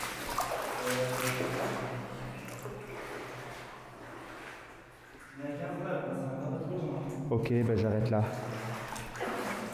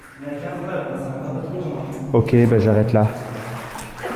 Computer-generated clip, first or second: second